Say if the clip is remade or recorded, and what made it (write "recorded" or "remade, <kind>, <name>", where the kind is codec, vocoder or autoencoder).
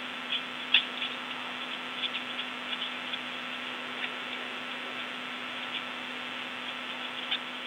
recorded